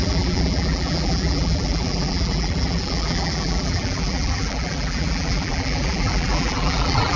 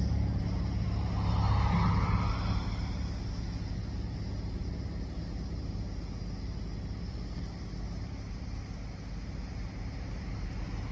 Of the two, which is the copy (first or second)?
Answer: first